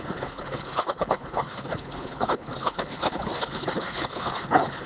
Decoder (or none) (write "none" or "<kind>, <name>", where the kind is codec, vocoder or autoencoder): codec, HILCodec